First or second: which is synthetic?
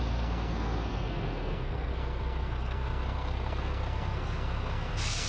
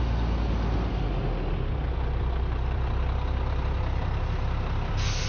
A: first